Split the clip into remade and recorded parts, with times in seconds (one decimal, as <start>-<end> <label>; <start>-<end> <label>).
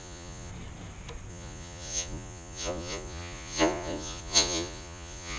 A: 0.0-0.5 remade; 0.5-1.3 recorded; 1.3-5.4 remade